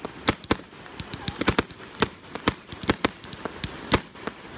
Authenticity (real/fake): real